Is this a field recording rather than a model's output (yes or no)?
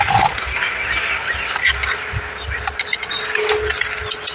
yes